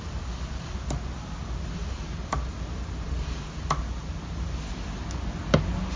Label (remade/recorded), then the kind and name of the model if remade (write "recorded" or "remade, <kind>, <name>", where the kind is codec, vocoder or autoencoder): recorded